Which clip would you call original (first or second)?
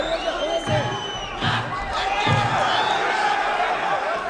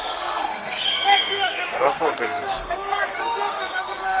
first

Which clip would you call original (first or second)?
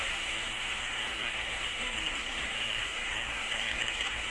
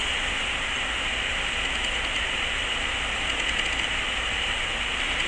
second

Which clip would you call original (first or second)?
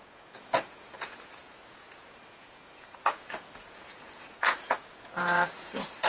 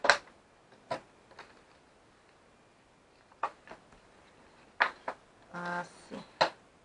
second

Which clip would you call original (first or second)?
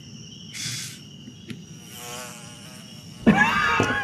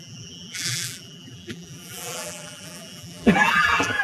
first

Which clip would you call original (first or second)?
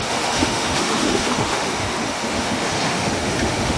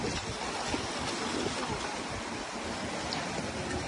second